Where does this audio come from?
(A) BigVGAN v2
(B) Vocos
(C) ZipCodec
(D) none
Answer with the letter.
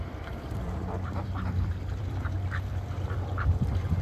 A